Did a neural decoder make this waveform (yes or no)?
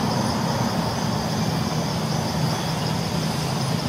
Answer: no